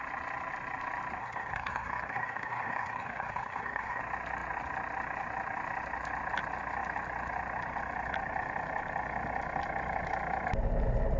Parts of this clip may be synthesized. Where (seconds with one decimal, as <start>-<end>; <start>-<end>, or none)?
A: 1.2-4.0